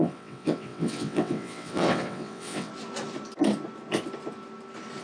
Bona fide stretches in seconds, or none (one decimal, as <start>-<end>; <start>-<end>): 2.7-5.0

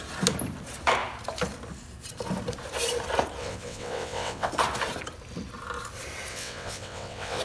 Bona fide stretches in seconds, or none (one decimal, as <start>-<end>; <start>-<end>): 0.0-3.4; 4.5-6.3

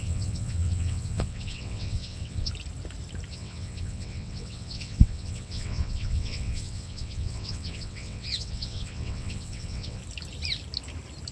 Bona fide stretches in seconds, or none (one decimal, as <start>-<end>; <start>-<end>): 2.5-3.3; 10.0-11.3